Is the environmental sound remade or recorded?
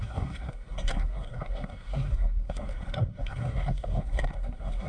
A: remade